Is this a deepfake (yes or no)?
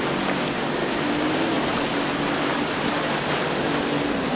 no